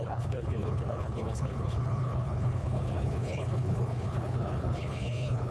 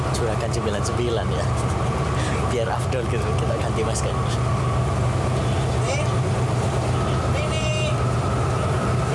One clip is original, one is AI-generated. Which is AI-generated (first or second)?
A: first